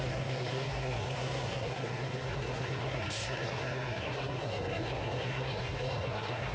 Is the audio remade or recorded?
remade